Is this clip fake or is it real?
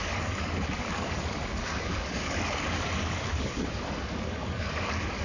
fake